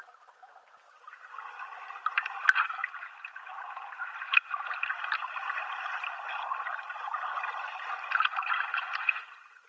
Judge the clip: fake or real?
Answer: real